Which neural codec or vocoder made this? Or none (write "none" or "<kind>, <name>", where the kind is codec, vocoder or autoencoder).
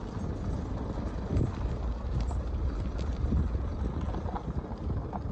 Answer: none